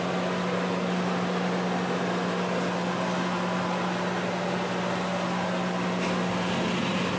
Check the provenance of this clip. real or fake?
real